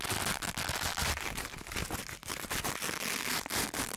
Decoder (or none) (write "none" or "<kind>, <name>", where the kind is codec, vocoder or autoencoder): none